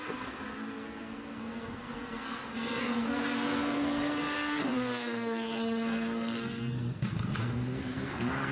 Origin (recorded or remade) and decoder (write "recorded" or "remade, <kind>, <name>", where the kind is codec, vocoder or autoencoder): remade, codec, SNAC